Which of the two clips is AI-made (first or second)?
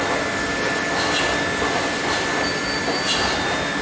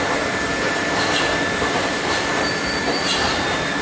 second